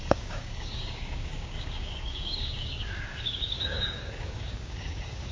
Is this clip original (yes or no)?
no